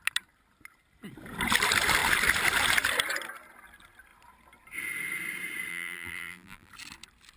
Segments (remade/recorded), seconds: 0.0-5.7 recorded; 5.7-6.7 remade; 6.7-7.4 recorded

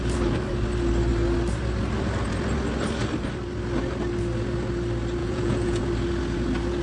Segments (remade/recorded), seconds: 0.0-5.2 recorded; 5.2-5.8 remade; 5.8-6.8 recorded

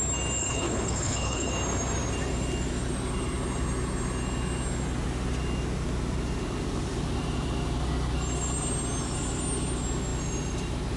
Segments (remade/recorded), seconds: 0.0-0.4 recorded; 0.4-1.5 remade; 1.5-11.0 recorded

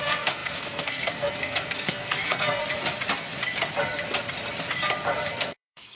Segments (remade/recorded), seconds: 0.0-2.6 remade; 2.6-5.3 recorded; 5.3-5.9 remade

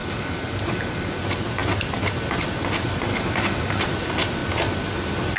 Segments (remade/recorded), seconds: 0.0-1.2 remade; 1.2-3.1 recorded; 3.1-3.8 remade; 3.8-5.4 recorded